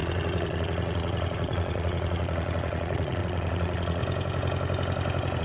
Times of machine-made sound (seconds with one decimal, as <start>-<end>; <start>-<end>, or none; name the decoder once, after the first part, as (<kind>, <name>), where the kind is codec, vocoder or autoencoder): 0.0-4.0 (vocoder, Vocos)